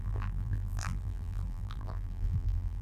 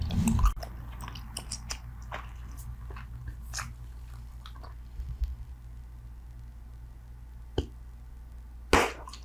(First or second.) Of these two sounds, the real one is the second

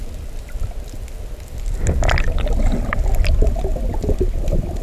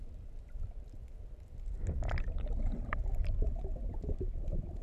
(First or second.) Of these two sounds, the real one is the first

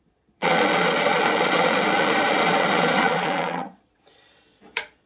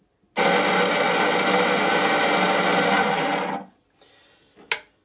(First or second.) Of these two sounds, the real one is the second